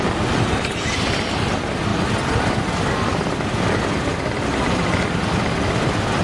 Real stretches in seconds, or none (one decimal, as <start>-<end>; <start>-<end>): 0.0-6.2